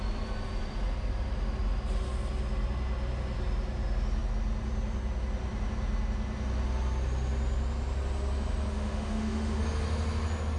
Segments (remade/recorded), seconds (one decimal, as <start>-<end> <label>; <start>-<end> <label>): 0.0-8.7 recorded; 8.7-9.6 remade; 9.6-10.6 recorded